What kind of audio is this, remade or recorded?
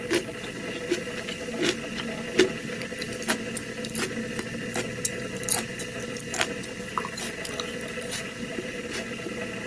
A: recorded